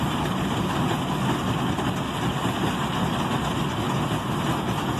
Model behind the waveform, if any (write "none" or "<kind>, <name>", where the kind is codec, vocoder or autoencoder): none